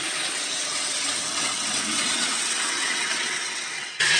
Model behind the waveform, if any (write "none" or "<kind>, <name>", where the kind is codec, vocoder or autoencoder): vocoder, WaveNeXt